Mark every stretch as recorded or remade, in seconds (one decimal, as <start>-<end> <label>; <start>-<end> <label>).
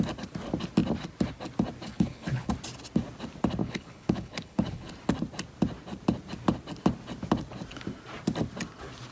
0.0-1.9 recorded; 1.9-2.5 remade; 2.5-3.6 recorded; 3.6-4.9 remade; 4.9-9.1 recorded